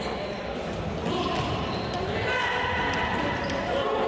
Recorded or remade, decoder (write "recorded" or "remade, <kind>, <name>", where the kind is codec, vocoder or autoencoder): recorded